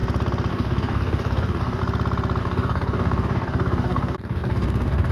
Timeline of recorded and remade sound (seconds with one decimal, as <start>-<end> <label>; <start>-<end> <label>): 0.0-0.5 recorded; 0.5-1.8 remade; 1.8-2.4 recorded; 2.4-5.1 remade